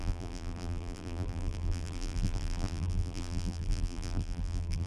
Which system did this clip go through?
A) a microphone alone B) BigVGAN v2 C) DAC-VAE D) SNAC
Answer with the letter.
B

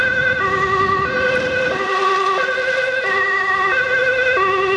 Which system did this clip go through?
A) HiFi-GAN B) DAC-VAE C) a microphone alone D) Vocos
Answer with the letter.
C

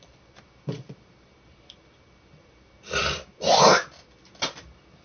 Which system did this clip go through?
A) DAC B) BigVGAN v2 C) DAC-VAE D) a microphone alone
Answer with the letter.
B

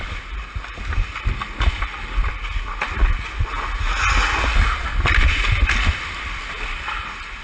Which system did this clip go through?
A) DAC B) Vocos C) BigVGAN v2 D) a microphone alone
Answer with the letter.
D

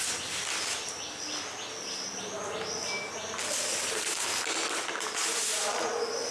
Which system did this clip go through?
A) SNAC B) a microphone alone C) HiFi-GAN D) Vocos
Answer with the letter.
B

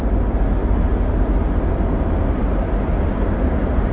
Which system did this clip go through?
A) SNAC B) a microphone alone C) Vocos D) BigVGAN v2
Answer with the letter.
B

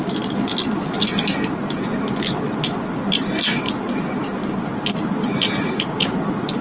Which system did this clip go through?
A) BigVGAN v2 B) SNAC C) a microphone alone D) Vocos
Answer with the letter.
C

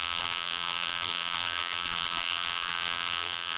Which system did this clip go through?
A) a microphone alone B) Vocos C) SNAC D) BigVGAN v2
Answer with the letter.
D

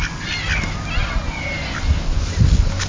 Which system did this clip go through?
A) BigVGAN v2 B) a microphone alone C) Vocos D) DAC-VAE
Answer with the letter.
B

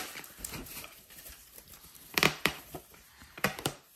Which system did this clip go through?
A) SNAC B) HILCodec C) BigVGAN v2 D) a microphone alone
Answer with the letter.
C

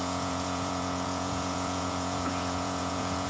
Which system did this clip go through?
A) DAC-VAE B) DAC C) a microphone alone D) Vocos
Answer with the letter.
D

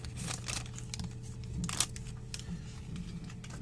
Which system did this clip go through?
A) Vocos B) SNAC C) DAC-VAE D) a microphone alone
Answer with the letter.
D